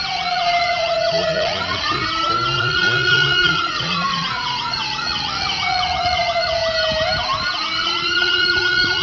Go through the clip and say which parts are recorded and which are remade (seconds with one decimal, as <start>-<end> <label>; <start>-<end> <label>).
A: 0.0-2.0 remade; 2.0-2.6 recorded; 2.6-6.6 remade; 6.6-7.8 recorded; 7.8-9.0 remade